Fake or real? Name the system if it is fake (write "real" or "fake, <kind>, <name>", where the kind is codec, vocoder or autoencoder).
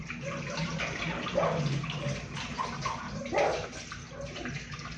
real